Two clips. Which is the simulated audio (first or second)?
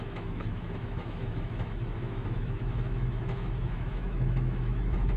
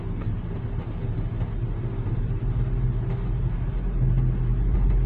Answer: first